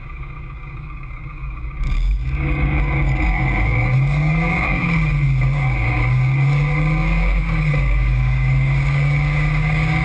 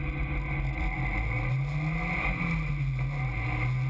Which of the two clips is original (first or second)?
second